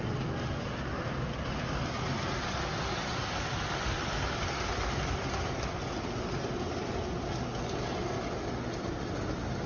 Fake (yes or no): no